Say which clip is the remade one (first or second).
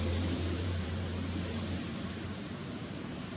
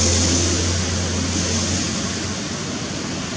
first